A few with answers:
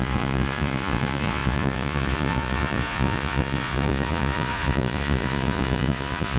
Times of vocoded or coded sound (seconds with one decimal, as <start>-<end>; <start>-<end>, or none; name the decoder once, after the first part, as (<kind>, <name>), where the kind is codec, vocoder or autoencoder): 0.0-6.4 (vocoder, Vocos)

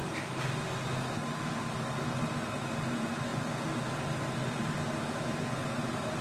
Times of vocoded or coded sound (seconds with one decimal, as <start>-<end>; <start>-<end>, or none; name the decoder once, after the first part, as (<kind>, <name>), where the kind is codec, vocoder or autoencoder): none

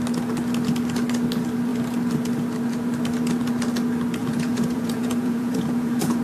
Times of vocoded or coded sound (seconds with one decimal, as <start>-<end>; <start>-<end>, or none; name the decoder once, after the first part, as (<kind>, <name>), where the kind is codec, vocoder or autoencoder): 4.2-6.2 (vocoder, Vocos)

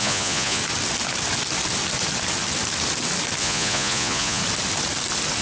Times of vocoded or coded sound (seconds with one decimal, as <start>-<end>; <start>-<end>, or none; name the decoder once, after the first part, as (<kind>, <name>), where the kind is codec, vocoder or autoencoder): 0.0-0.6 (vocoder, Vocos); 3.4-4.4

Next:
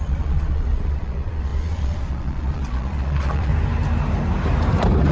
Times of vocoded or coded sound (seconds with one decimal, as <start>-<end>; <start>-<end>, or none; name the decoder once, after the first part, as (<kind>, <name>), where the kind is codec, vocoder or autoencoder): 0.0-3.5 (vocoder, Vocos)

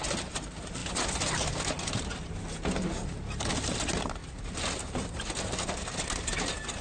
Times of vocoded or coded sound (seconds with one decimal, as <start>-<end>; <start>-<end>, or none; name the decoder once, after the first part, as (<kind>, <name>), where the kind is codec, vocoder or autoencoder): none

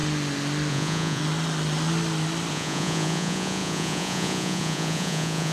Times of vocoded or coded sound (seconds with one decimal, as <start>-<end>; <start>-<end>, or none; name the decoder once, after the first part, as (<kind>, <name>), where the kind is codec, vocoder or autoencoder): 0.7-1.2 (vocoder, Vocos); 2.5-5.5

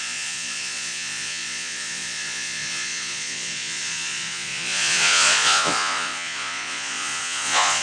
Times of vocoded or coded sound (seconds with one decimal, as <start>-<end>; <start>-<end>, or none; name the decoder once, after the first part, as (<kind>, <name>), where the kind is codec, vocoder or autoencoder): 0.0-7.8 (vocoder, Vocos)